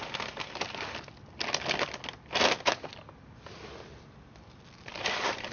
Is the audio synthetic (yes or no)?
no